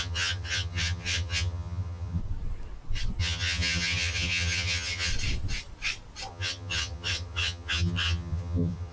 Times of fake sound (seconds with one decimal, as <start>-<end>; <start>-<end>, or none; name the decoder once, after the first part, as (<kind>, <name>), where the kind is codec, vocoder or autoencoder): 0.0-2.2 (vocoder, HiFi-GAN); 3.2-5.1; 6.3-8.9